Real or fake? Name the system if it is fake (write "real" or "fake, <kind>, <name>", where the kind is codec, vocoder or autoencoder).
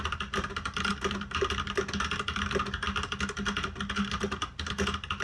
fake, vocoder, BigVGAN v2